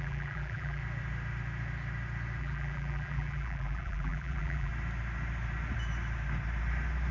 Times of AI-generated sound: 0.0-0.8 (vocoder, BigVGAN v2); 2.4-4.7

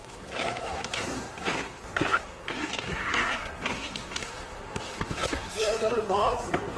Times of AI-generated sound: 0.0-6.8 (codec, SNAC)

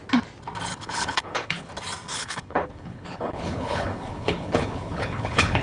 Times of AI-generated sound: 0.7-1.7 (codec, HILCodec); 2.1-5.6

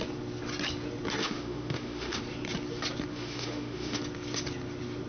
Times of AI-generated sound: 1.2-2.2 (autoencoder, DAC-VAE); 3.1-4.0

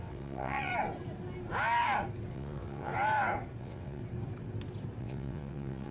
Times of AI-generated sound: 0.0-0.7 (vocoder, WaveNeXt); 2.3-2.9; 3.6-4.0; 5.0-5.9